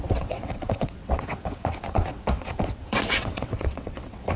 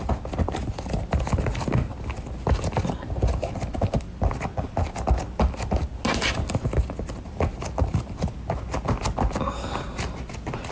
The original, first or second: second